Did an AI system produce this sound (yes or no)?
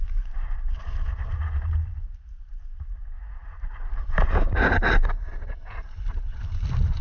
yes